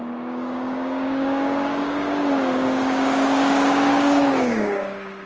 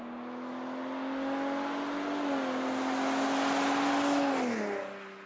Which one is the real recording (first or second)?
second